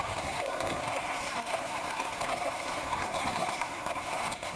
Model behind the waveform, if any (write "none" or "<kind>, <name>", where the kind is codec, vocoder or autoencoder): codec, SNAC